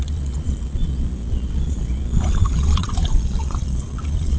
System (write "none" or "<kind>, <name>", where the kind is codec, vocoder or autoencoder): vocoder, Vocos